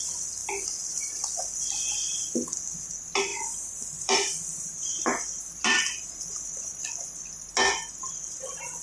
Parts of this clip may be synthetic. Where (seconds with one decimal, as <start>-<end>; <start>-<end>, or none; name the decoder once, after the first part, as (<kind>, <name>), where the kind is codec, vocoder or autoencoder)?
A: 0.4-1.4 (vocoder, BigVGAN v2); 3.3-7.0